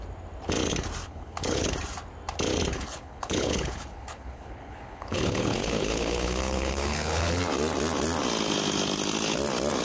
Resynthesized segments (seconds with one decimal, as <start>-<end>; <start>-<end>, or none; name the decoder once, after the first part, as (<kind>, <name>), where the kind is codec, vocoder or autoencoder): 1.0-1.7 (codec, HILCodec); 2.7-7.4